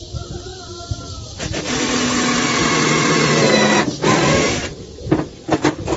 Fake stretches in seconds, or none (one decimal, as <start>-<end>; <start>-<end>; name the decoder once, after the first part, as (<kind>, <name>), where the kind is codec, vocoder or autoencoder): 4.7-5.3 (vocoder, BigVGAN v2)